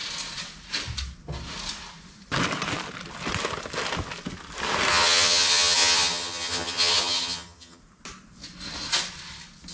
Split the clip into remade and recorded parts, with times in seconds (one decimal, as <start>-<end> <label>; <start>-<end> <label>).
0.0-4.9 recorded; 4.9-7.8 remade; 7.8-9.7 recorded